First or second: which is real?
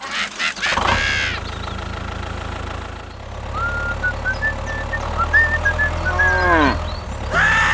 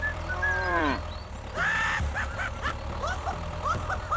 first